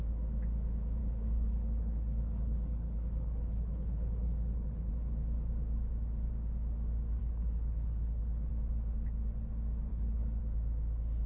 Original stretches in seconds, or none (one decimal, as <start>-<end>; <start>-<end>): 0.0-1.0; 4.9-7.2; 8.5-9.9; 10.4-11.3